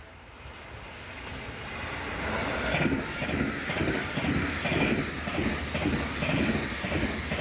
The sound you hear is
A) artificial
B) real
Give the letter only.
B